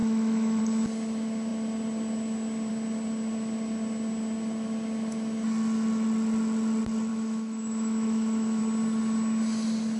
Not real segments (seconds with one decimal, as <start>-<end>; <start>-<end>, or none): 0.0-0.6; 7.1-8.6